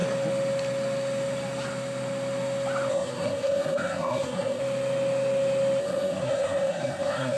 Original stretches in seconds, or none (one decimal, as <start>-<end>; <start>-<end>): 0.0-2.9; 4.6-5.8